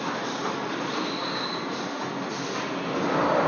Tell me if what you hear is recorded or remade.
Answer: recorded